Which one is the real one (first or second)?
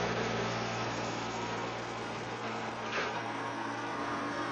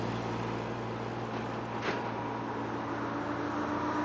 second